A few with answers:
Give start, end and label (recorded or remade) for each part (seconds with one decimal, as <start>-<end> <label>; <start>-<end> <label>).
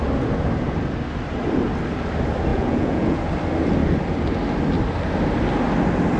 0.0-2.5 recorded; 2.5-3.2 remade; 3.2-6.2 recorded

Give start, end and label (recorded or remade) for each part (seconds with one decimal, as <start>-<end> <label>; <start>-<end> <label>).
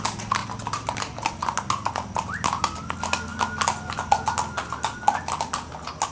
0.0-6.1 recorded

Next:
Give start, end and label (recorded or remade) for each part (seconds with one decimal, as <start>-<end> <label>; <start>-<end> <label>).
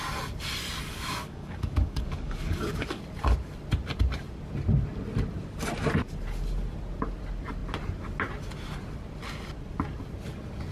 0.0-0.9 recorded; 0.9-3.0 remade; 3.0-10.7 recorded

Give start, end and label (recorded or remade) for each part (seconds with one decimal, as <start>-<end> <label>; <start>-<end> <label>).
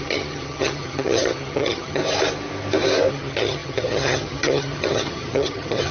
0.0-2.0 remade; 2.0-3.1 recorded; 3.1-5.9 remade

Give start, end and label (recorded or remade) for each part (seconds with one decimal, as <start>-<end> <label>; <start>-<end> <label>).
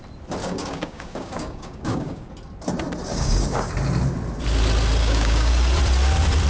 0.0-0.4 recorded; 0.4-2.3 remade; 2.3-3.1 recorded; 3.1-3.7 remade; 3.7-5.0 recorded; 5.0-5.5 remade; 5.5-6.5 recorded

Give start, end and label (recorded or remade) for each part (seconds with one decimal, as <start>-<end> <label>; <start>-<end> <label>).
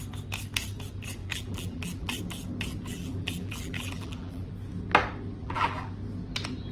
0.0-1.2 recorded; 1.2-2.2 remade; 2.2-2.9 recorded; 2.9-4.5 remade; 4.5-5.4 recorded; 5.4-5.9 remade; 5.9-6.7 recorded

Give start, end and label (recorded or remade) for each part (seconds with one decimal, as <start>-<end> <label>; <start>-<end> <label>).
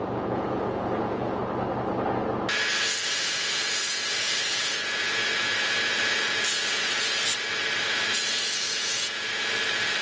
0.0-1.4 remade; 1.4-2.5 recorded; 2.5-7.3 remade; 7.3-7.9 recorded; 7.9-10.0 remade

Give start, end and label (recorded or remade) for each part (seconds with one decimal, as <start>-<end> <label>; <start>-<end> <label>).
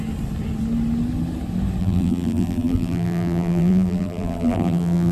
0.0-1.8 recorded; 1.8-5.1 remade